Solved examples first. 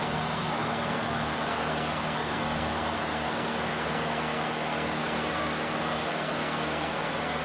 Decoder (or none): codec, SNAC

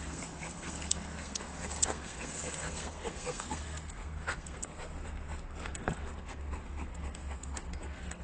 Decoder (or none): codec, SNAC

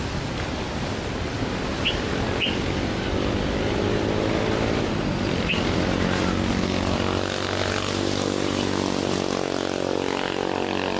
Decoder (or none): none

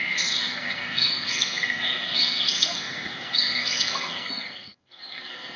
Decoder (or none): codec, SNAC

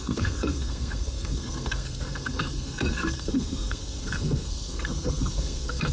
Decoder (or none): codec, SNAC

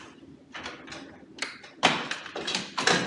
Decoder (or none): none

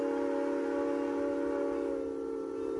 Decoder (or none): none